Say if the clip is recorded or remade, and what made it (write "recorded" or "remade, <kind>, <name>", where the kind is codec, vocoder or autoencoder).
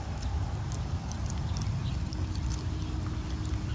recorded